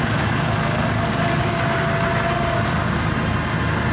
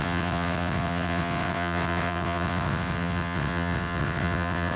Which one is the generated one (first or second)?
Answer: second